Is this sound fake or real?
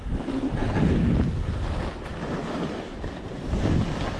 real